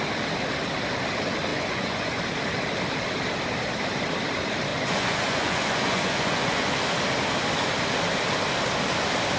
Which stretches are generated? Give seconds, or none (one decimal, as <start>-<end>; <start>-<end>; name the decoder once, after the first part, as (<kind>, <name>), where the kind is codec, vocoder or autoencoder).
1.5-2.2 (vocoder, Vocos); 4.7-6.7